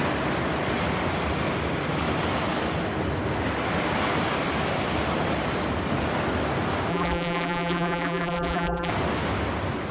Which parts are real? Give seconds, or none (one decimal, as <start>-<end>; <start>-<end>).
0.0-6.9; 8.9-9.9